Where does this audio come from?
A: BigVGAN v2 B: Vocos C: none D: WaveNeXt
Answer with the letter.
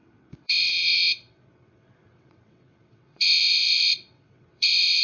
D